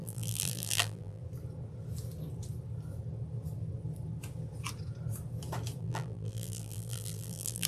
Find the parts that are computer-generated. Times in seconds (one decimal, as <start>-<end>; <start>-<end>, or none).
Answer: 0.0-1.2; 5.8-7.7